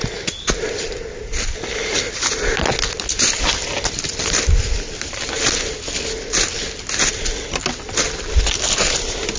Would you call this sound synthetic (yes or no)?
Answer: no